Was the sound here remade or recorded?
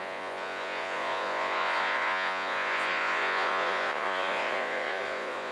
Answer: remade